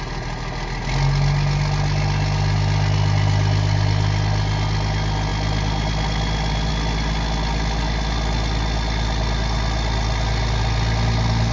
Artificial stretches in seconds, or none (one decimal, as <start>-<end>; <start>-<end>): none